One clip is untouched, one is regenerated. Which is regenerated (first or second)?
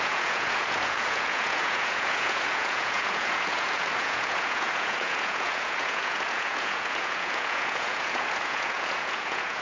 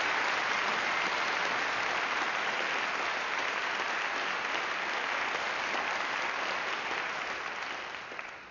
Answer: first